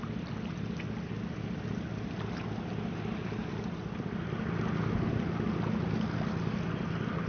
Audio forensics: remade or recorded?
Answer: recorded